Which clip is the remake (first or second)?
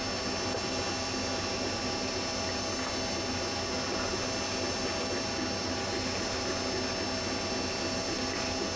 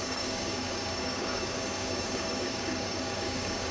second